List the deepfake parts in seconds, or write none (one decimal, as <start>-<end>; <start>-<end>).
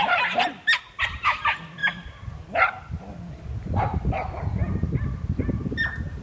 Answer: none